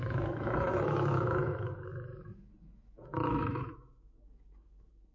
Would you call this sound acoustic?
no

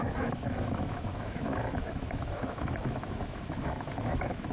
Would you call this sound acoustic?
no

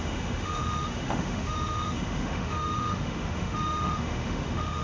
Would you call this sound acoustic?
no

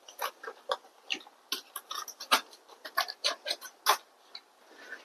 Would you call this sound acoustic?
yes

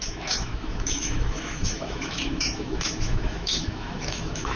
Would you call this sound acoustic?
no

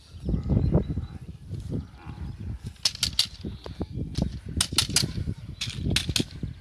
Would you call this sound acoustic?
yes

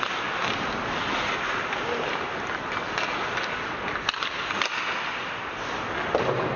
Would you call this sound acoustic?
yes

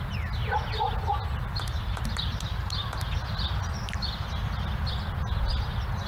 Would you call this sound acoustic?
yes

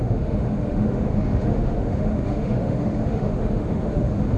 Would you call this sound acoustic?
no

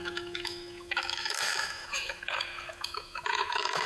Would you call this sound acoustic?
no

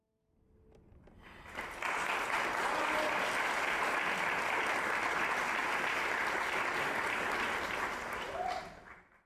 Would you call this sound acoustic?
yes